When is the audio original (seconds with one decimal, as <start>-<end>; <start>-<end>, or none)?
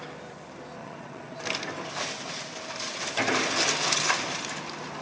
0.0-0.8; 1.4-5.0